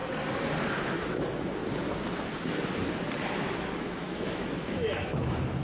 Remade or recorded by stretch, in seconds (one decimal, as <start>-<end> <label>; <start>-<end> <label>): 0.0-0.8 recorded; 0.8-1.6 remade; 1.6-3.5 recorded; 3.5-5.6 remade